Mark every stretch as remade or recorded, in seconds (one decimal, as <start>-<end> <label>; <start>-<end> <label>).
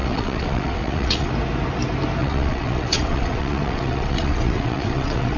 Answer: 0.0-1.3 remade; 1.3-2.2 recorded; 2.2-5.4 remade